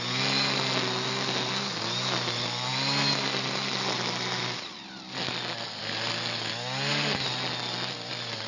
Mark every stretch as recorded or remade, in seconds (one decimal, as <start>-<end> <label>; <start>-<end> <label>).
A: 0.0-8.5 recorded